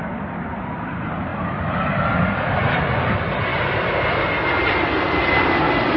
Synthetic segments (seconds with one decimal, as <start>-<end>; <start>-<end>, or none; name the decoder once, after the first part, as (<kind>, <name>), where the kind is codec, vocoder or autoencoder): 1.3-3.0 (vocoder, BigVGAN v2)

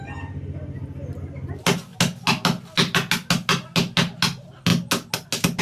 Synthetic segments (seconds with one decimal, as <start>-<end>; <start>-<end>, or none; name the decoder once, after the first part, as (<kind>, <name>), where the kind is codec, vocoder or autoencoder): none

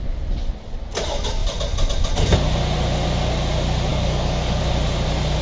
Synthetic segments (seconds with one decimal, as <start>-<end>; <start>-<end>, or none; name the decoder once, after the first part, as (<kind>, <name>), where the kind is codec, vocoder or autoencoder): 3.9-4.6 (codec, DAC)

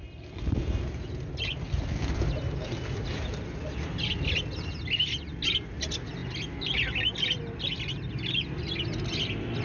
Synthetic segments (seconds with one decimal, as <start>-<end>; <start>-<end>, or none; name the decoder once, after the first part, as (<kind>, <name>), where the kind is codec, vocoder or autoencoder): none

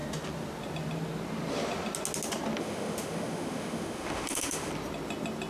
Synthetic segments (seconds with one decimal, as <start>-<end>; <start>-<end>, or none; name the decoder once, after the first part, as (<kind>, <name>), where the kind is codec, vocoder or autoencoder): 2.6-4.7 (autoencoder, DAC-VAE)

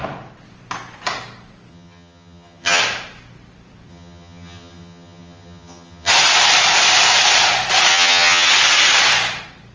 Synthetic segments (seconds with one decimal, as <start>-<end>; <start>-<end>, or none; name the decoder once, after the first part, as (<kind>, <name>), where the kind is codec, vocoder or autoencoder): 1.7-2.8 (vocoder, HiFi-GAN); 3.9-6.1; 7.9-8.5

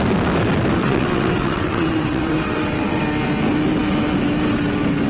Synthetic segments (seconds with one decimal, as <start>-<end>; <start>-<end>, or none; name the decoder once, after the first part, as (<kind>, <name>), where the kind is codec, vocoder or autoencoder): 0.8-3.0 (vocoder, WaveNeXt)